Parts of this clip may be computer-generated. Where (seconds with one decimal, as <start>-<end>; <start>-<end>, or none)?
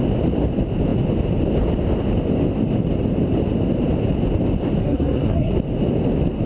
4.8-5.5